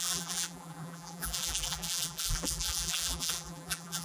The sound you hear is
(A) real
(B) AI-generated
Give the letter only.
B